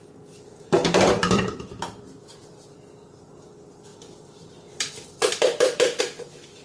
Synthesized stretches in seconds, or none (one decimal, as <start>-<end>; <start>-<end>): 0.8-1.7; 3.9-6.0